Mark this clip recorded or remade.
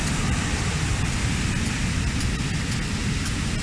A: recorded